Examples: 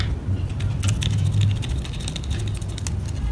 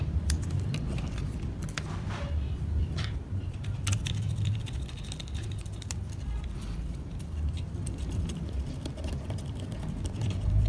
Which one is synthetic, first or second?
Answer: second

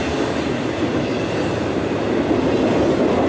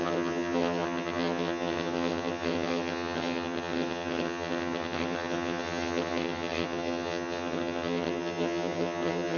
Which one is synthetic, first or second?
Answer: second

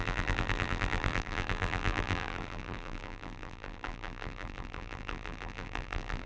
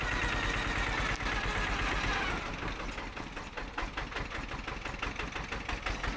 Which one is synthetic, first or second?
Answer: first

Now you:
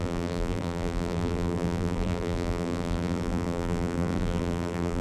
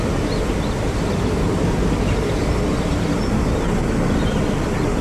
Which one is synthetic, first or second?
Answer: first